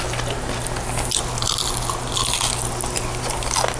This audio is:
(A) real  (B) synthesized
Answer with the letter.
A